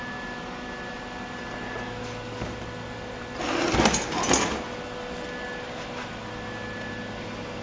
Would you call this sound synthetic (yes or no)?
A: no